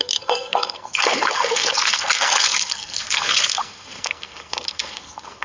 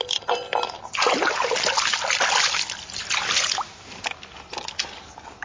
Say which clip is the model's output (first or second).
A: first